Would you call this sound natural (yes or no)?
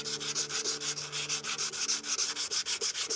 yes